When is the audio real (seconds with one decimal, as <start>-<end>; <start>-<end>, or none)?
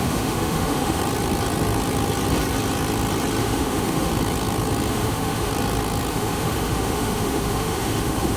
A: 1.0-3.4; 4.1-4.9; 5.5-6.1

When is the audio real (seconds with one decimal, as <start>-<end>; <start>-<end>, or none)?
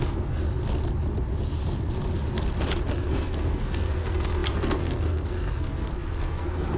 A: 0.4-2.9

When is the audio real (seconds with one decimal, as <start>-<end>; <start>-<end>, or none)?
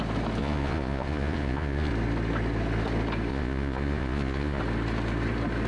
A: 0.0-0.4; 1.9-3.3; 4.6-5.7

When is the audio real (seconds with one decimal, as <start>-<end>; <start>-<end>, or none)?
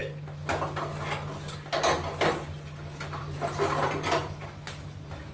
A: 0.0-3.2; 4.2-5.3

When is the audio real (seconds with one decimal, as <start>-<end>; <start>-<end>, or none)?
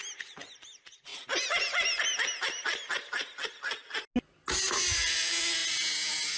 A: 0.0-6.4